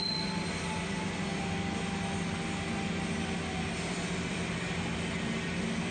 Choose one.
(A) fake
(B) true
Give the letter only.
B